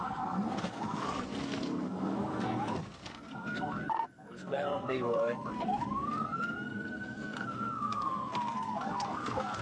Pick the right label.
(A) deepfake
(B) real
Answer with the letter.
A